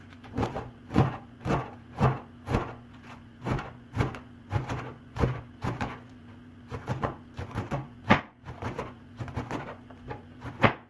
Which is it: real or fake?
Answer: fake